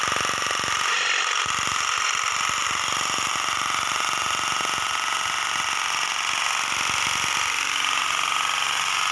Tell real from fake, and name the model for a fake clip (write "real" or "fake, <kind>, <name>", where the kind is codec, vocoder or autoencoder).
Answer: real